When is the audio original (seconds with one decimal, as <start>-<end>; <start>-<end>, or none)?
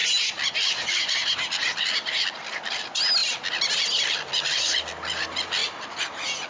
0.0-6.5